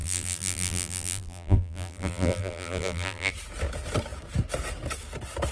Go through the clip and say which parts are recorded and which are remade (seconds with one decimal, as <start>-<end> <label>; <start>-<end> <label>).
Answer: 0.0-3.3 remade; 3.3-5.5 recorded